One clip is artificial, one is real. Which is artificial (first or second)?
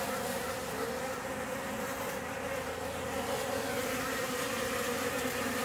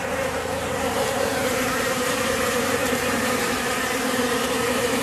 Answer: second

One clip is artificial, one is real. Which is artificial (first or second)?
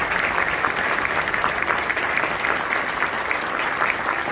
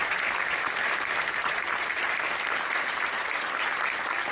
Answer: second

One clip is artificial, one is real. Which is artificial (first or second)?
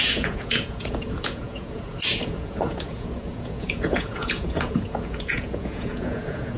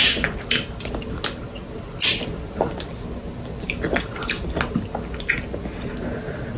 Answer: first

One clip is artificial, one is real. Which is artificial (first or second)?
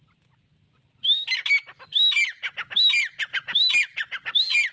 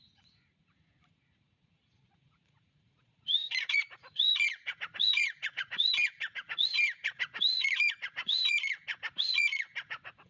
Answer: second